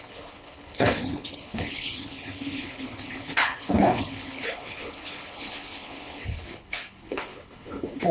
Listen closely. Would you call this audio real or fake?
fake